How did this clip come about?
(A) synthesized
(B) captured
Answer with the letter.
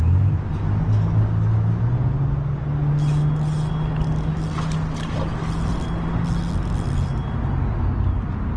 B